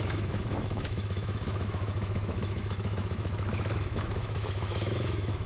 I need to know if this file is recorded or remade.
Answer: remade